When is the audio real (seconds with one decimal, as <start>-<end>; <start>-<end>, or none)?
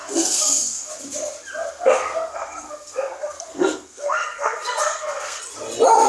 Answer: 0.9-1.7; 5.4-6.1